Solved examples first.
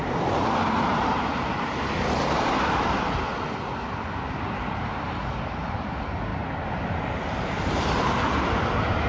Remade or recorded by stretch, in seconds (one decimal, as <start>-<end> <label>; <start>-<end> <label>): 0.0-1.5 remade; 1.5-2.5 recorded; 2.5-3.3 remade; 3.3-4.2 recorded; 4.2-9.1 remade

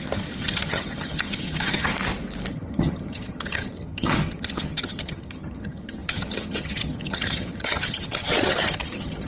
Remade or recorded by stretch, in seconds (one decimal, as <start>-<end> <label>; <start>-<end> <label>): 0.0-1.9 remade; 1.9-2.5 recorded; 2.5-9.3 remade

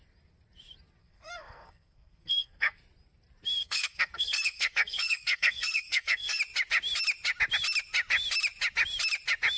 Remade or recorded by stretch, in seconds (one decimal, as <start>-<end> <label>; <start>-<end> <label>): 0.0-1.0 recorded; 1.0-2.8 remade; 2.8-3.6 recorded; 3.6-6.4 remade; 6.4-9.6 recorded

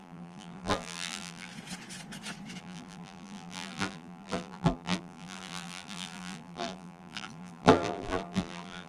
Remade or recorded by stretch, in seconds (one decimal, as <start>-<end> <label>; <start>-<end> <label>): 0.0-1.5 remade; 1.5-2.6 recorded; 2.6-8.9 remade

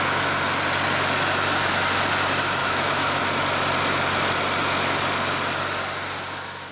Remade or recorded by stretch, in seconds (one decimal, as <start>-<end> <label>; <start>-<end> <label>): 0.0-2.6 recorded; 2.6-3.2 remade; 3.2-6.7 recorded

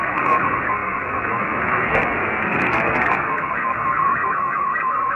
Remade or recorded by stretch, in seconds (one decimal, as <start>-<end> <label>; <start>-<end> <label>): 0.0-5.2 remade

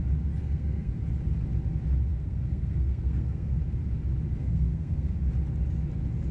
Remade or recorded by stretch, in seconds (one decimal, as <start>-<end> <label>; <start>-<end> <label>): 0.0-0.4 recorded; 0.4-0.9 remade; 0.9-2.1 recorded; 2.1-3.6 remade; 3.6-4.4 recorded; 4.4-5.2 remade; 5.2-6.3 recorded